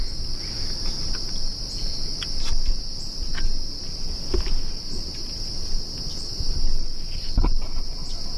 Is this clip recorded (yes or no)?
yes